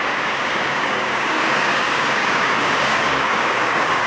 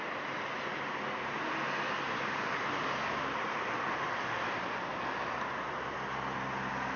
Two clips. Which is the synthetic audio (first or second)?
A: first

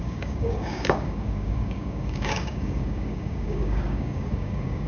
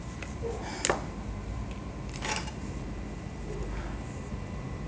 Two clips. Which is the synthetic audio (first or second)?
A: first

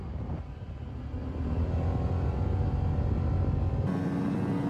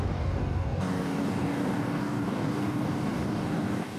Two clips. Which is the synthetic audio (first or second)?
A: second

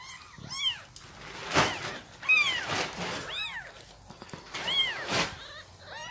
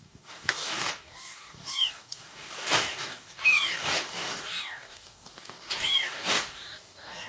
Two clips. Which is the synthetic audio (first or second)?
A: second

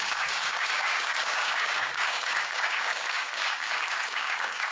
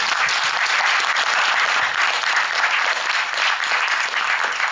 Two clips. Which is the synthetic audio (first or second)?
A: first